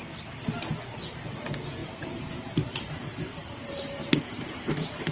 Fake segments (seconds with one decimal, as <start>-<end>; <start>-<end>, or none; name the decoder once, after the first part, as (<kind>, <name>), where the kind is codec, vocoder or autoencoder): 1.8-5.1 (vocoder, BigVGAN v2)